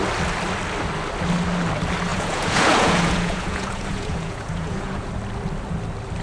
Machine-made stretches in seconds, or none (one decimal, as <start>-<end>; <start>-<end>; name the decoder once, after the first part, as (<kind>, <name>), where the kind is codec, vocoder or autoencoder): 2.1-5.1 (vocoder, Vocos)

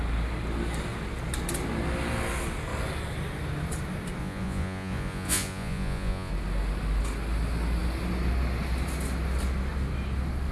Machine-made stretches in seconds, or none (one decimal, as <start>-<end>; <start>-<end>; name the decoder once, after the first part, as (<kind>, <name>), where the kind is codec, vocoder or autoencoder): 4.2-6.3 (vocoder, Vocos)

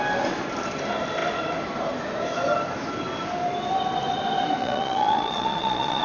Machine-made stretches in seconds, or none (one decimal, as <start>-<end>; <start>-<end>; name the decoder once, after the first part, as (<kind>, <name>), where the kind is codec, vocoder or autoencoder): 4.6-6.0 (vocoder, Vocos)

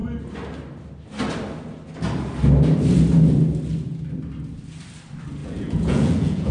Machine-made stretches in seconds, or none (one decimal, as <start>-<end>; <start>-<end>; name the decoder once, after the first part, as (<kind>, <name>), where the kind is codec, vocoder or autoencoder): 5.4-6.5 (vocoder, Vocos)

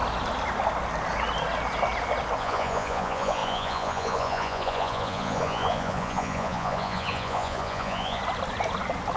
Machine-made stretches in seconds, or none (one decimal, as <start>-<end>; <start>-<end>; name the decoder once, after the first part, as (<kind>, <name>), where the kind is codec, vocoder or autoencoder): 2.4-8.2 (vocoder, Vocos)

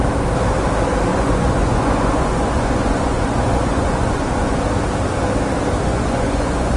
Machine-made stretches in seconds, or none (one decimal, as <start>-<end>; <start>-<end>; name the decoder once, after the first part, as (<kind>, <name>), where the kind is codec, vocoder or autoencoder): 1.1-4.6 (vocoder, Vocos); 5.9-6.8